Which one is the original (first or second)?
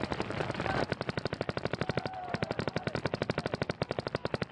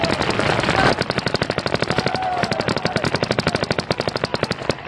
second